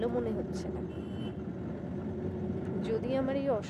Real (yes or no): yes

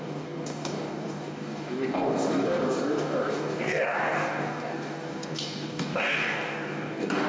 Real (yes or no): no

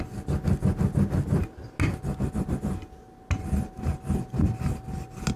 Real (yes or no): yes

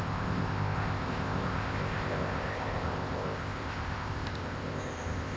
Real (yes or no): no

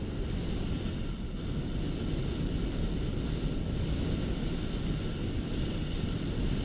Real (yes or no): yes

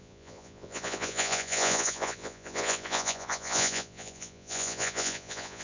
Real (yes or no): no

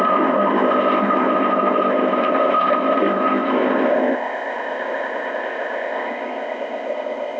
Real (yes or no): no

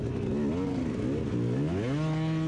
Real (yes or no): yes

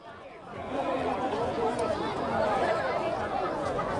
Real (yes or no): no